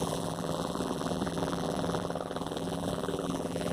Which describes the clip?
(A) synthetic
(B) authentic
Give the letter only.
A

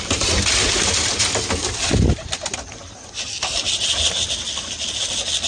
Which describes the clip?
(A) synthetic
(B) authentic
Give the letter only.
B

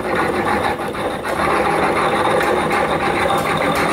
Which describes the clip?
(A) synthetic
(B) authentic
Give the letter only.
A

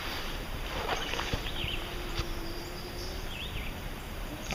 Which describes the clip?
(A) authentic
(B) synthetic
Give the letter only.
B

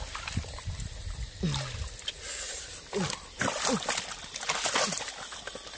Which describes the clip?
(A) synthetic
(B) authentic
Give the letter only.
B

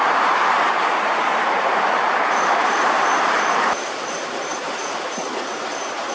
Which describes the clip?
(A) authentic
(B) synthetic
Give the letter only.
B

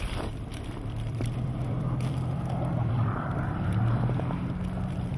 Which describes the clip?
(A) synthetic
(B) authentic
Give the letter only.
A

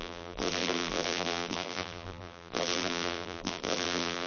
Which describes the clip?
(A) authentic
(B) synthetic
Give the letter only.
B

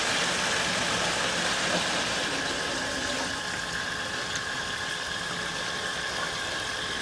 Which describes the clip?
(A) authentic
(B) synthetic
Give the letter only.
A